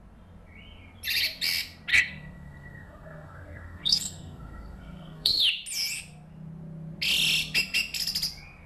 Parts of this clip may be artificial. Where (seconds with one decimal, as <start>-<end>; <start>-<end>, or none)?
1.9-5.4